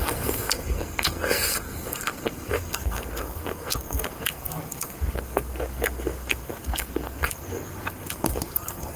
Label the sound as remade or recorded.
remade